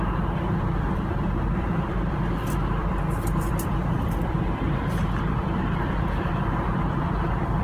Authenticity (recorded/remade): remade